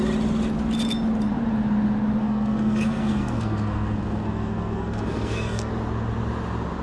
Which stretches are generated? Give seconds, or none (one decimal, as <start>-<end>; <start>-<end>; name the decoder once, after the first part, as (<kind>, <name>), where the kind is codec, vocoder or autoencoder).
2.2-5.7 (codec, SNAC)